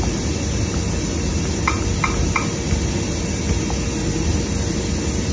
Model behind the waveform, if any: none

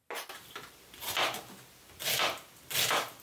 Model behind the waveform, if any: none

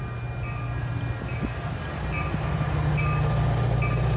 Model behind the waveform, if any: none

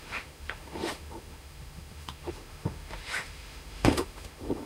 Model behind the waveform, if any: autoencoder, DAC-VAE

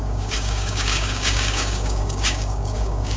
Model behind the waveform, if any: codec, DAC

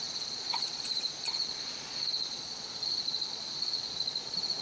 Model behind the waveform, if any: vocoder, Vocos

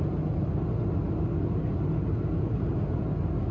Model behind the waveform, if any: none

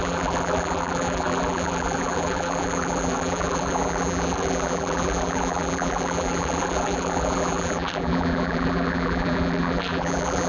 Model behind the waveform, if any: vocoder, BigVGAN v2